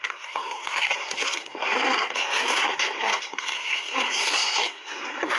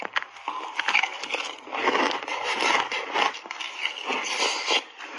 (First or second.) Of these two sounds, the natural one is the second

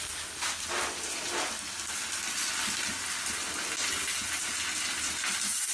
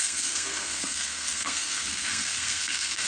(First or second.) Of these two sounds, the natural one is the first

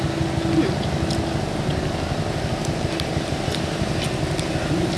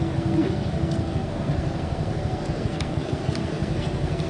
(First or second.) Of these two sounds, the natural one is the first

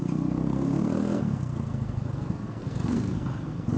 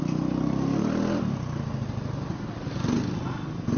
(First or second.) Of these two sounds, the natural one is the second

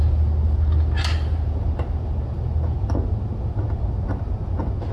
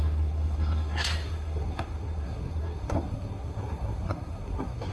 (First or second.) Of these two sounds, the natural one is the first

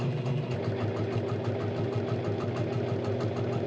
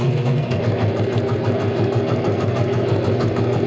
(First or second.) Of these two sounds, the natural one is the first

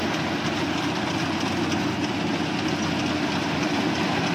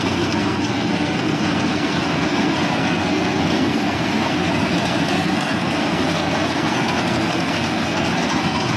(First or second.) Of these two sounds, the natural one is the first